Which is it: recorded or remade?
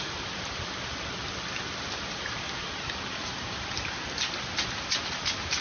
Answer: recorded